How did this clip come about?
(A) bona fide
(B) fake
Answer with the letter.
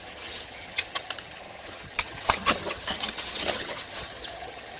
B